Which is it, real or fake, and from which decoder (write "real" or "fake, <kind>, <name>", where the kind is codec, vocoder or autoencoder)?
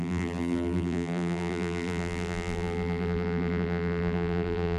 fake, vocoder, BigVGAN v2